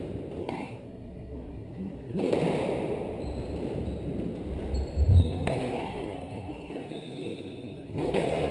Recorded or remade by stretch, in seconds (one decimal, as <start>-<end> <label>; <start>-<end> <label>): 0.0-0.4 recorded; 0.4-2.3 remade; 2.3-5.2 recorded; 5.2-8.5 remade